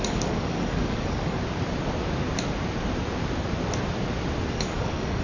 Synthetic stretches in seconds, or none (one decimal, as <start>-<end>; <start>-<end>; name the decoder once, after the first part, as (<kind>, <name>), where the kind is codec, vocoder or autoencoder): 0.0-1.4 (codec, DAC); 4.5-5.2